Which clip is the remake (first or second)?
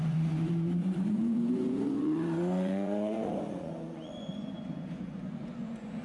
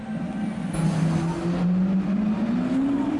first